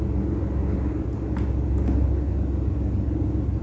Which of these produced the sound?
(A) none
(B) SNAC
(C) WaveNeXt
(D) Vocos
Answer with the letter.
A